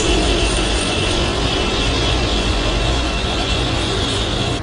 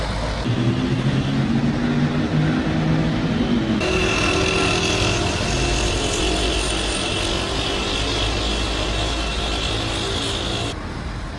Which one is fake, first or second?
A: first